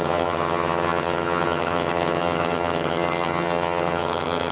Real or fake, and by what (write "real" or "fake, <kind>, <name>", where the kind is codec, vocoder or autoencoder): fake, vocoder, HiFi-GAN